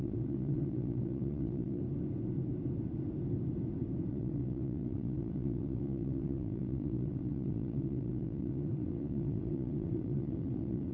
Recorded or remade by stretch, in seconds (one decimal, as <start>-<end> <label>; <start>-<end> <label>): 0.0-1.8 remade; 1.8-4.1 recorded; 4.1-10.9 remade